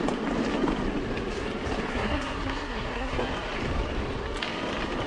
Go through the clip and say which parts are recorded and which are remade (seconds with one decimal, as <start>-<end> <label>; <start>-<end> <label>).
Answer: 0.0-1.9 recorded; 1.9-3.3 remade; 3.3-5.1 recorded